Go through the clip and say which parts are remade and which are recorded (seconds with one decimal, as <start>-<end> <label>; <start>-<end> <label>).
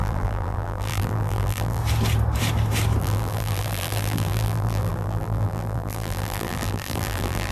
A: 0.0-1.8 remade; 1.8-3.0 recorded; 3.0-7.5 remade